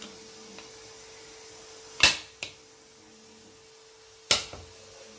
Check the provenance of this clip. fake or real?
real